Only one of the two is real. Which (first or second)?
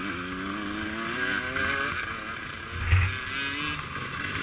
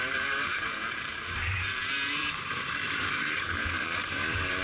first